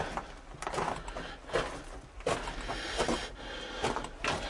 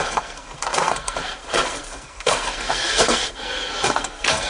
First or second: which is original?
first